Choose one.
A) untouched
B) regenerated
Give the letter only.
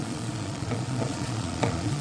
B